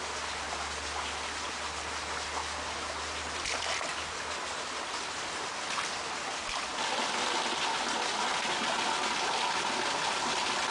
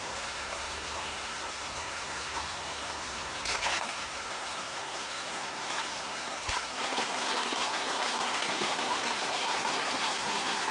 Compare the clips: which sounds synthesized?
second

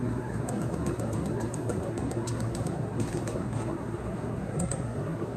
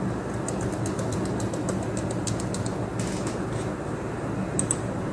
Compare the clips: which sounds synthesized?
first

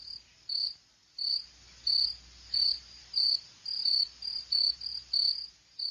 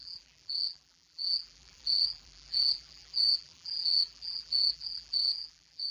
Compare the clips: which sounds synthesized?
second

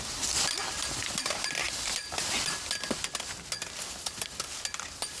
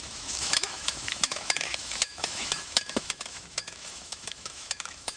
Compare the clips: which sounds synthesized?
second